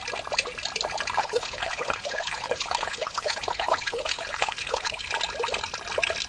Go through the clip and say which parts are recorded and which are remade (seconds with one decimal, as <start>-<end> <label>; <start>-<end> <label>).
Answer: 0.0-1.2 recorded; 1.2-5.0 remade; 5.0-6.3 recorded